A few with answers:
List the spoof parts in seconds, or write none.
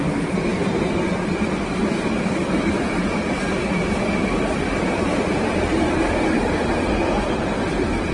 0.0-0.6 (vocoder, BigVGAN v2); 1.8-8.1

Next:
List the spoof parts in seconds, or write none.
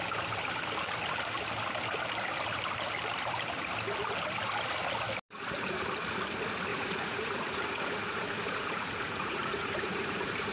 6.7-10.5 (vocoder, Vocos)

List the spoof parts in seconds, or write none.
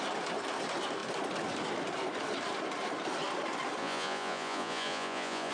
3.8-5.5 (vocoder, Vocos)